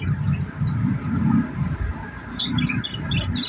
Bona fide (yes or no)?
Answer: yes